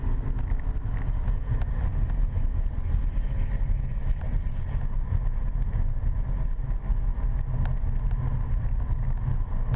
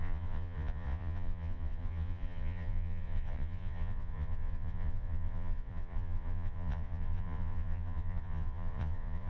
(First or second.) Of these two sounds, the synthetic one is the second